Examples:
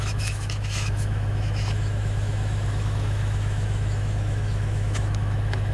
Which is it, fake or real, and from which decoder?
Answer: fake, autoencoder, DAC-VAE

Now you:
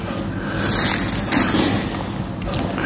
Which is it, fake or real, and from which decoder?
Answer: real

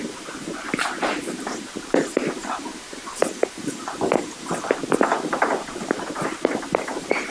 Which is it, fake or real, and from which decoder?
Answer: fake, vocoder, BigVGAN v2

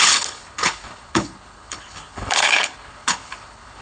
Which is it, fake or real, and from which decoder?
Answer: fake, codec, HILCodec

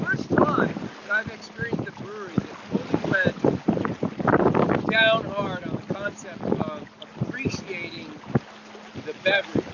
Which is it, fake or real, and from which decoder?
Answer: real